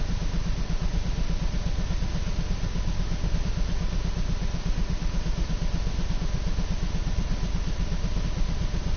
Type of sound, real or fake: real